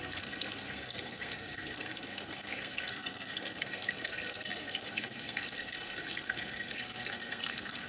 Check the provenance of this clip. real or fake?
fake